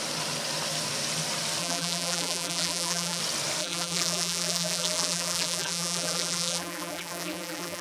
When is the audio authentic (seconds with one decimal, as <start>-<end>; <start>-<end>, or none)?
0.0-1.6; 3.2-3.6